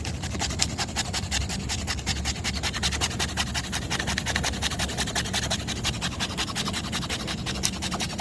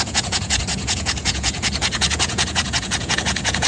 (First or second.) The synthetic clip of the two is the second